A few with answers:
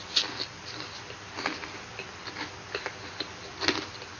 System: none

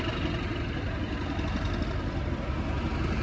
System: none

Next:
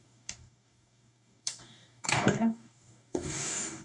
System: codec, DAC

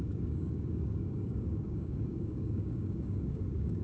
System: codec, DAC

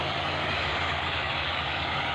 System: codec, DAC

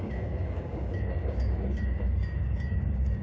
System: codec, DAC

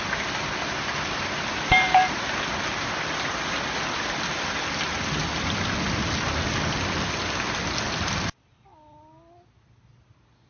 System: none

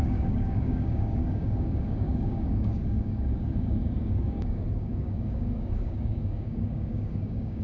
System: codec, DAC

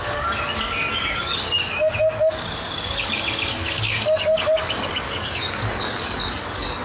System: codec, DAC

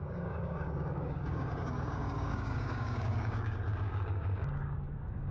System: codec, DAC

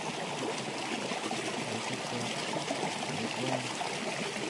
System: none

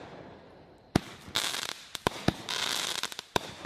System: none